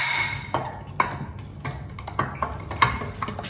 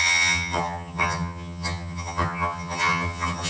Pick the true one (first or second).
first